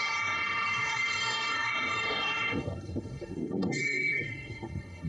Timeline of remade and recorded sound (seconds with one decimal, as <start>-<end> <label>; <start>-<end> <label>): 0.0-5.1 remade